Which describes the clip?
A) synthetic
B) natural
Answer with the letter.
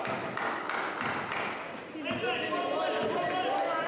B